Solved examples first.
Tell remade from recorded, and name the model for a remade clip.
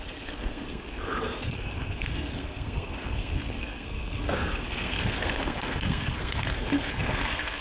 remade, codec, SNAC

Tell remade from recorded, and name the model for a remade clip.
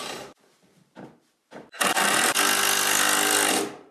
recorded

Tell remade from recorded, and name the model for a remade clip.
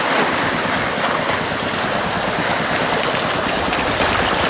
recorded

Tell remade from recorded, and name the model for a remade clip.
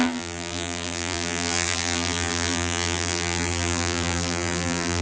remade, vocoder, BigVGAN v2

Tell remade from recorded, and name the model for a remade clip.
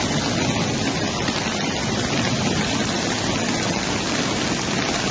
recorded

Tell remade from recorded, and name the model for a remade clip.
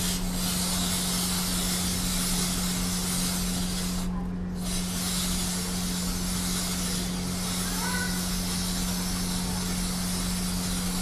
recorded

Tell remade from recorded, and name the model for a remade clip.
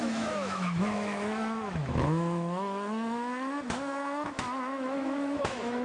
remade, autoencoder, DAC-VAE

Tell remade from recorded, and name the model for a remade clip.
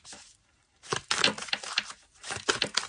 recorded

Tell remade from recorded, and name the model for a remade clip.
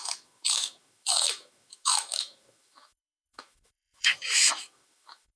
remade, autoencoder, DAC-VAE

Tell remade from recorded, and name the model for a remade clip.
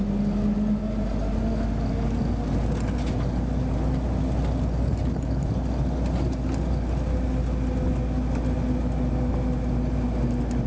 recorded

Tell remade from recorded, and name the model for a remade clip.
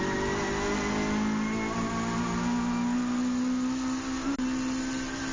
recorded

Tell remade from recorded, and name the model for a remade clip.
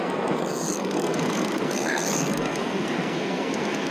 remade, codec, SNAC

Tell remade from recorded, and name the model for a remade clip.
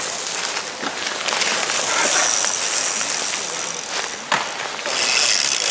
recorded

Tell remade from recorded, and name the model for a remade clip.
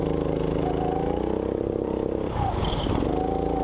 recorded